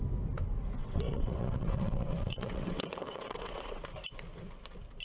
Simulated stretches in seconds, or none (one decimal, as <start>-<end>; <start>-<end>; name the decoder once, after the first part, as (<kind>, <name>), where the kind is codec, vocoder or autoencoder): 0.8-3.8 (vocoder, WaveNeXt)

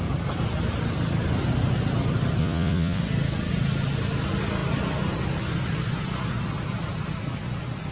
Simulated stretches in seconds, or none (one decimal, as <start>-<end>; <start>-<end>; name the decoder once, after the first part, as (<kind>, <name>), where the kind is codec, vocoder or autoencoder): 2.4-3.0 (vocoder, Vocos)

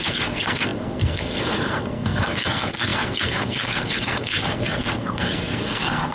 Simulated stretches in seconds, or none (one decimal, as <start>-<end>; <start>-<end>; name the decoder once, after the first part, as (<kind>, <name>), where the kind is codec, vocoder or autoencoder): 0.0-6.1 (codec, SNAC)

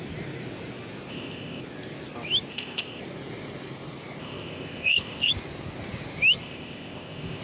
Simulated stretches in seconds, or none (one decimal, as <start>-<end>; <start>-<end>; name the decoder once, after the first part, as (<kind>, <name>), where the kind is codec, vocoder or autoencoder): 1.1-1.6 (codec, ZipCodec); 2.5-3.0; 4.2-5.3; 6.4-7.4

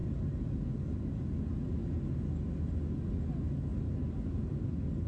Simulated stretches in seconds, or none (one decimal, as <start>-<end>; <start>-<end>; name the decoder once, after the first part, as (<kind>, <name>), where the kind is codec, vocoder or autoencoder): none

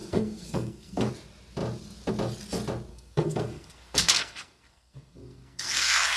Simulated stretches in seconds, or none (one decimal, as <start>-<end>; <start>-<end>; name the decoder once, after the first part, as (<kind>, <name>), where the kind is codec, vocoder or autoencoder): 0.0-1.1 (codec, SNAC); 2.9-6.2

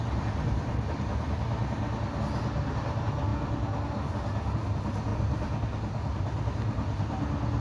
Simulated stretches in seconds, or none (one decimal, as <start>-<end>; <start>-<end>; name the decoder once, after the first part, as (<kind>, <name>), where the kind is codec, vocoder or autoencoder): none